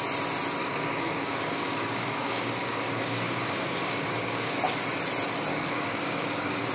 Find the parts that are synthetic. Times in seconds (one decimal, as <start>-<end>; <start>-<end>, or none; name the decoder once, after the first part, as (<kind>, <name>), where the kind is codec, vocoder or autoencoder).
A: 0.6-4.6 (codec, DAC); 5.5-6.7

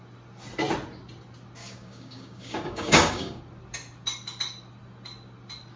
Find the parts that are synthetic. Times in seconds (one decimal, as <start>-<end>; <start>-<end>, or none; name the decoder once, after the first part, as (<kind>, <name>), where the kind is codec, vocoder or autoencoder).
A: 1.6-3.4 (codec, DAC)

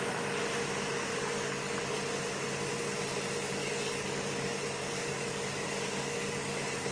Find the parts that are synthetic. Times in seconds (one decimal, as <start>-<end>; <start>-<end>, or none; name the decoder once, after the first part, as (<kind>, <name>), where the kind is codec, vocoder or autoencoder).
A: 1.1-2.0 (codec, DAC); 3.6-6.9